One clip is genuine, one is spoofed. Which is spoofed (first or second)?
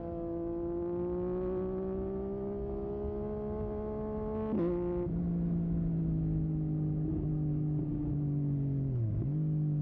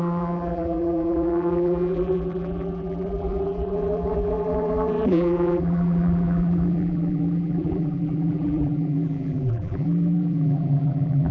second